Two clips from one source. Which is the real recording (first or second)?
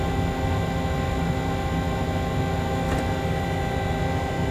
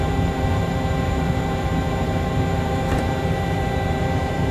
first